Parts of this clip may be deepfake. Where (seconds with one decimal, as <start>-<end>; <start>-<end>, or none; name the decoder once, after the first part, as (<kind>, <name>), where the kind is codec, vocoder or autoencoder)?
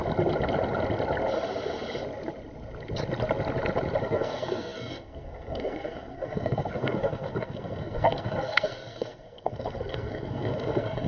4.0-11.1 (codec, SNAC)